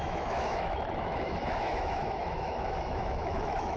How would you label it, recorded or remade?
remade